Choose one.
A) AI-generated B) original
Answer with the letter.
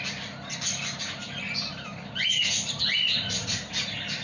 B